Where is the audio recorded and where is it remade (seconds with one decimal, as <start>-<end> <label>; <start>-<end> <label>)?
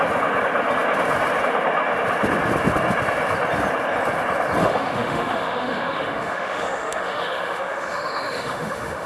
0.0-4.6 recorded; 4.6-9.1 remade